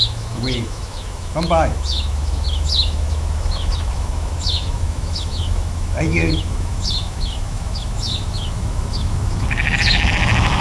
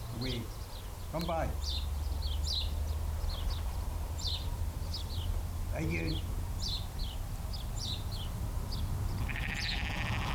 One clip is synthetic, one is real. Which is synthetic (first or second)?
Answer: first